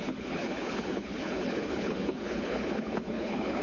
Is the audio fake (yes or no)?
yes